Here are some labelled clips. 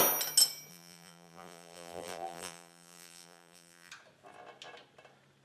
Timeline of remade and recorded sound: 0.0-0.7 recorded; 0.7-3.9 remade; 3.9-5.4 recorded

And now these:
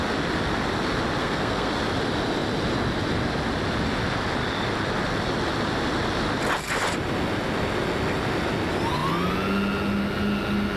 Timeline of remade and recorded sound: 0.0-1.2 recorded; 1.2-1.7 remade; 1.7-10.8 recorded

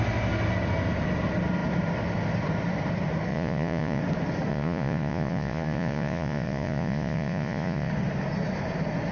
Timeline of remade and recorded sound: 0.0-3.3 recorded; 3.3-4.0 remade; 4.0-4.5 recorded; 4.5-7.9 remade; 7.9-9.1 recorded